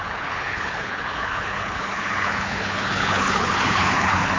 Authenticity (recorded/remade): remade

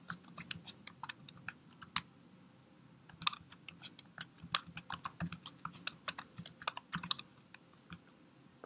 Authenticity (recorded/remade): recorded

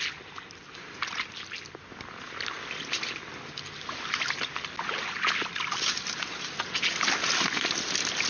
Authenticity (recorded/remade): recorded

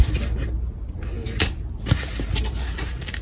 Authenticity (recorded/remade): recorded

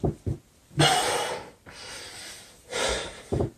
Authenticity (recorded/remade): recorded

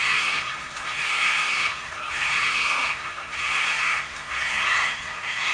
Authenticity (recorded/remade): remade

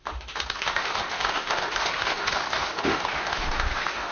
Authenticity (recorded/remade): remade